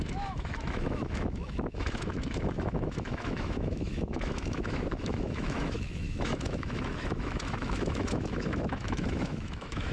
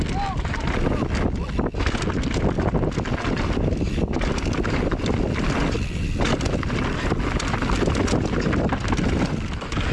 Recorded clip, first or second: second